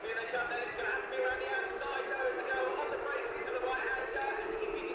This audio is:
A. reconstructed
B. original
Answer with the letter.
B